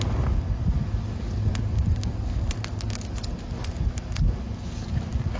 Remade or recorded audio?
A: recorded